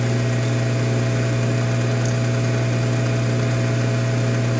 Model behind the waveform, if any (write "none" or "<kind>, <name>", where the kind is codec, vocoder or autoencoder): none